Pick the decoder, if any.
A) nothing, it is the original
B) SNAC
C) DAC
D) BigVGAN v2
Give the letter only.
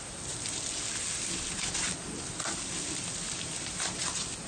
A